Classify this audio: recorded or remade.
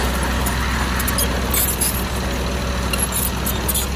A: recorded